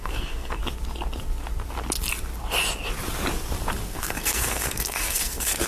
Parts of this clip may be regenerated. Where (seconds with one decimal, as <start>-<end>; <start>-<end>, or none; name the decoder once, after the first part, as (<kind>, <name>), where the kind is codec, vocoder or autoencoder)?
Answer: 0.0-0.6 (codec, SNAC); 3.9-5.7